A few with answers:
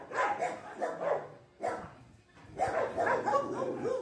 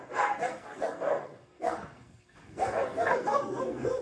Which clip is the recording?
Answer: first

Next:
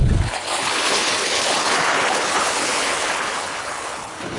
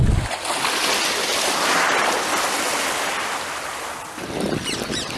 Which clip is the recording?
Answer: second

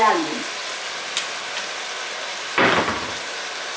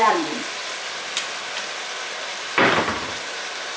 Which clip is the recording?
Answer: first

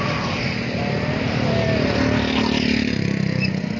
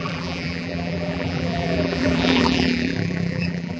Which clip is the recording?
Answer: first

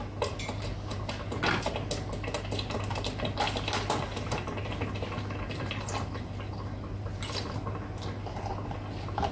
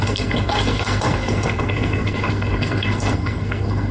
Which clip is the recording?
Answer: first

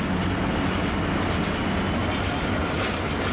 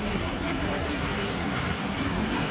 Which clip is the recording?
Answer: first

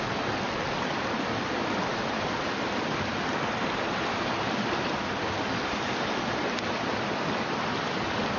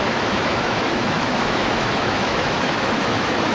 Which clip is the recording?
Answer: first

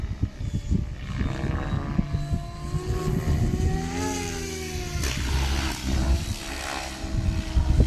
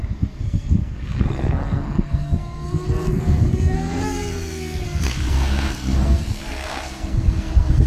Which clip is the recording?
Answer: first